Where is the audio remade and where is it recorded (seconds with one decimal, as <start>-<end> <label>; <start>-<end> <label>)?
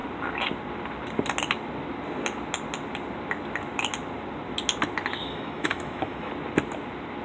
0.0-5.2 recorded; 5.2-6.3 remade; 6.3-7.2 recorded